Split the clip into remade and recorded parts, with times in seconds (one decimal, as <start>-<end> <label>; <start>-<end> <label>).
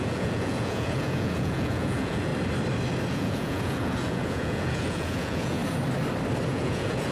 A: 0.0-2.3 remade; 2.3-3.1 recorded; 3.1-5.6 remade; 5.6-6.5 recorded; 6.5-7.1 remade